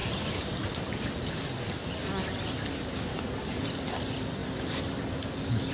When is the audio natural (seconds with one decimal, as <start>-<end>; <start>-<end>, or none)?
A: 0.0-1.8; 4.0-4.4; 5.3-5.7